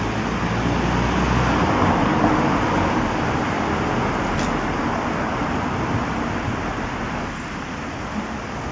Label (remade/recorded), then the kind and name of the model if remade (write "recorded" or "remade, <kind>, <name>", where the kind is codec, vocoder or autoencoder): recorded